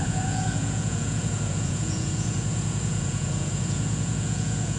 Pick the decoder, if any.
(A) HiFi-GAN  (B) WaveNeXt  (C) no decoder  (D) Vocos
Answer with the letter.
D